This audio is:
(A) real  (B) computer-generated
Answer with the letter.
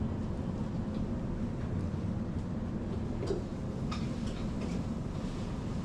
A